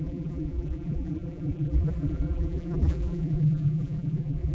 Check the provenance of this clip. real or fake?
fake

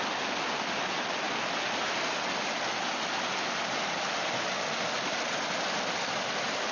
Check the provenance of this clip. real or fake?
real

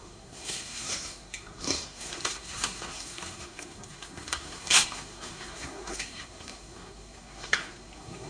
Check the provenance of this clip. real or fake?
fake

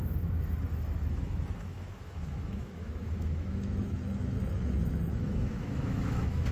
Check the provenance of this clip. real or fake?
fake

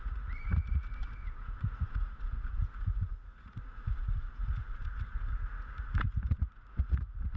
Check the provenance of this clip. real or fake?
fake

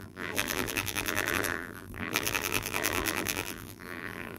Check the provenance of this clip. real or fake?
fake